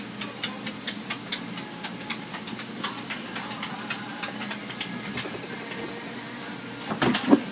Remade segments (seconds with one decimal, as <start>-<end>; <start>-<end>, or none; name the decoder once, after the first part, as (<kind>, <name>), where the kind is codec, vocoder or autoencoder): 4.6-5.8 (vocoder, BigVGAN v2)